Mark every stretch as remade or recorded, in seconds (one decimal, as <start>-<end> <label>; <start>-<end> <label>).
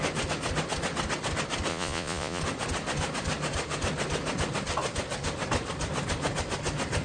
0.0-1.7 recorded; 1.7-2.4 remade; 2.4-7.0 recorded